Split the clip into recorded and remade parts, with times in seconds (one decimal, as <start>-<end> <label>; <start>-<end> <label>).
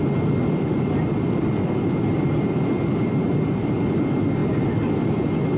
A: 0.0-5.6 recorded